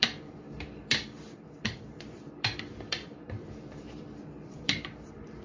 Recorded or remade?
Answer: remade